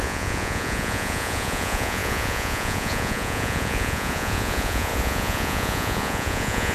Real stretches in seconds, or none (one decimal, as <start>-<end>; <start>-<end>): none